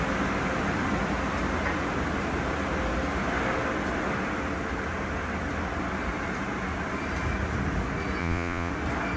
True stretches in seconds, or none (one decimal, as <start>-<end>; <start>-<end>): 0.0-8.2; 8.7-9.2